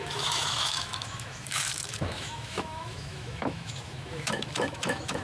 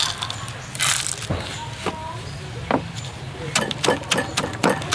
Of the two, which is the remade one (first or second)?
first